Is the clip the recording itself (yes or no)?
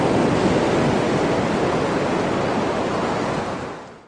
yes